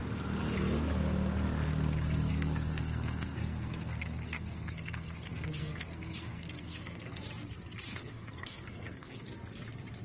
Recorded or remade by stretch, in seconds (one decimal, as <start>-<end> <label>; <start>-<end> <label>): 0.0-2.3 recorded; 2.3-7.2 remade; 7.2-7.9 recorded; 7.9-9.3 remade; 9.3-10.0 recorded